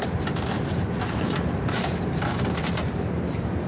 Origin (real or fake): fake